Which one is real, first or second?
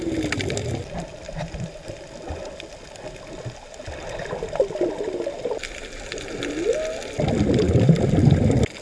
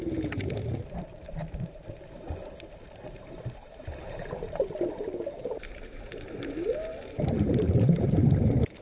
first